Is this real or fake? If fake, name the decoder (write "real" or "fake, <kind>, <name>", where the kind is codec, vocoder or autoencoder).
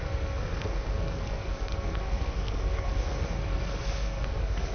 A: fake, codec, SNAC